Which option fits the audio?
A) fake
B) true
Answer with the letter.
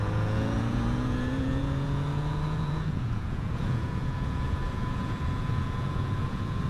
A